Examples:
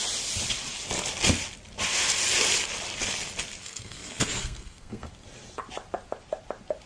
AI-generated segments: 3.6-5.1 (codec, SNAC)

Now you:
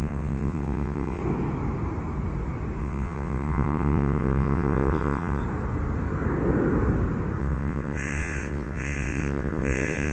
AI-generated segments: 0.0-1.2 (vocoder, WaveNeXt); 2.8-5.4; 7.4-10.1

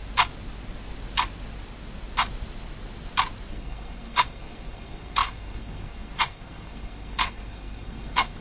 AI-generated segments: 3.5-8.4 (codec, SNAC)

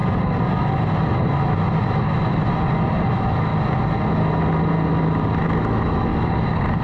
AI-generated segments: 3.1-3.5 (autoencoder, DAC-VAE); 5.4-6.1

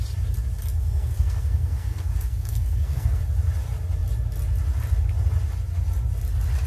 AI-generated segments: 0.8-3.2 (codec, SNAC)

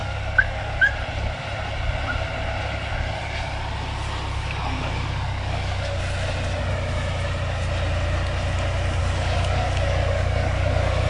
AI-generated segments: 0.0-0.9 (codec, DAC); 4.3-6.0; 9.0-11.1